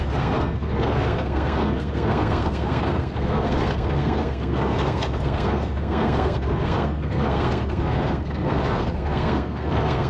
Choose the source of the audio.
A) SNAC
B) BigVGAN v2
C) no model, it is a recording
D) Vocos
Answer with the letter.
A